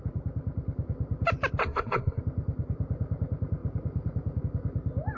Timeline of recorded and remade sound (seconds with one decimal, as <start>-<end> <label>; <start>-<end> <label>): 0.0-1.6 recorded; 1.6-2.2 remade; 2.2-5.2 recorded